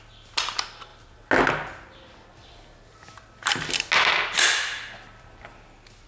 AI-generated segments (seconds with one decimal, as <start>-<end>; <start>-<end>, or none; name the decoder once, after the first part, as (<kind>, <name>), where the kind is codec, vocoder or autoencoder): none